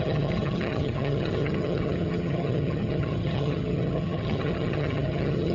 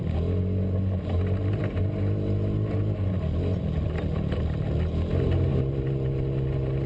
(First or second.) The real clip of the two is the second